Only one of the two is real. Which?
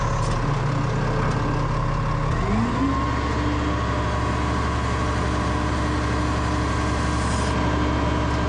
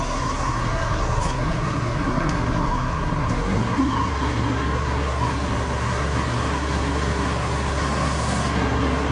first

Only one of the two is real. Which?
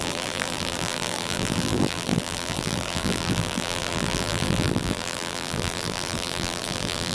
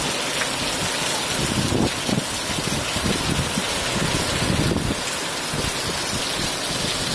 second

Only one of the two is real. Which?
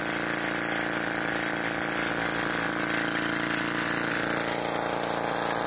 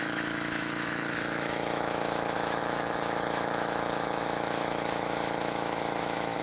first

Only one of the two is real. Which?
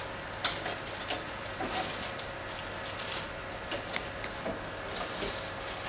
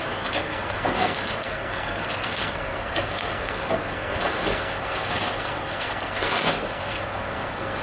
first